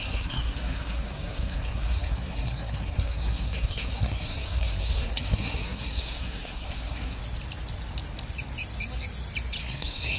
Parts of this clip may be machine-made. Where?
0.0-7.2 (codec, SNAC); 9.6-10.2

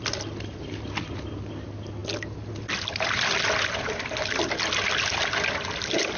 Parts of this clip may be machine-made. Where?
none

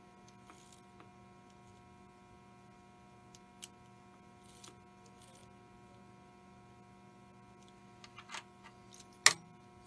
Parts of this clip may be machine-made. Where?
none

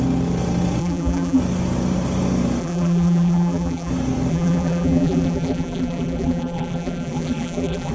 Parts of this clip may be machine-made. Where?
0.8-1.4 (vocoder, BigVGAN v2); 2.6-3.9; 4.3-7.9